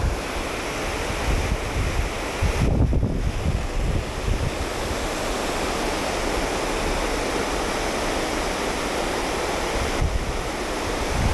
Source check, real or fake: real